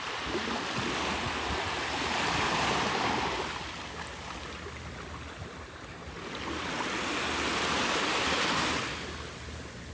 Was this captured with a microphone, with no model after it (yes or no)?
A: yes